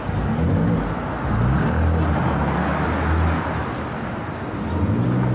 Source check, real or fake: real